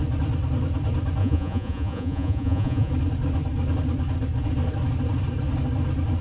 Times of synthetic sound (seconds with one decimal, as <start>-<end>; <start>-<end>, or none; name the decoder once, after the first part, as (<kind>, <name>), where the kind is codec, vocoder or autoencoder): 1.2-2.9 (vocoder, Vocos)